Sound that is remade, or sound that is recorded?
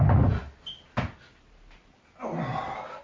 recorded